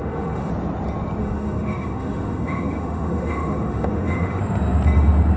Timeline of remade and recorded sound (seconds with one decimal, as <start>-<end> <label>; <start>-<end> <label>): 0.0-0.5 remade; 0.5-1.2 recorded; 1.2-4.4 remade; 4.4-5.4 recorded